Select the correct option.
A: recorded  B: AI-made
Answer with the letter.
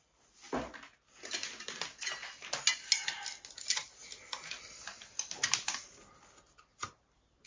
A